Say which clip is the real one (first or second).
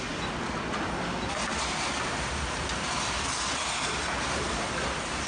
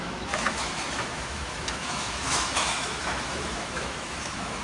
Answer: first